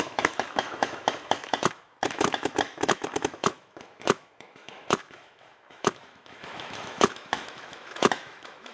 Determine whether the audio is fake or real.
fake